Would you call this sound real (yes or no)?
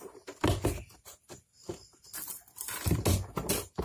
yes